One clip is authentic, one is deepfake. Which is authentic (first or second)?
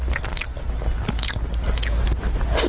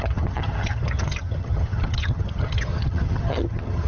first